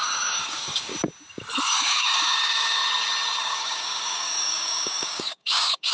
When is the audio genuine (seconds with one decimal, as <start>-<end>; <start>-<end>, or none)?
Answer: 0.9-1.6; 2.8-3.4